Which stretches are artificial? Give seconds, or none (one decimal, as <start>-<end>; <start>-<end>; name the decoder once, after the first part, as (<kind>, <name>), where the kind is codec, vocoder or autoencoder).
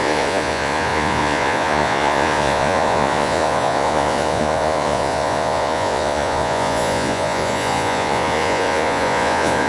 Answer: 0.0-9.7 (vocoder, Vocos)